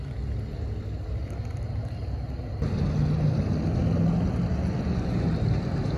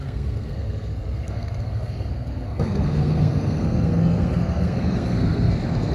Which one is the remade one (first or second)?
second